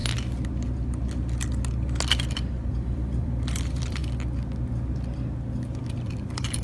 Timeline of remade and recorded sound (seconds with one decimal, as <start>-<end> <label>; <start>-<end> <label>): 0.0-2.7 recorded; 2.7-4.0 remade; 4.0-6.0 recorded; 6.0-6.6 remade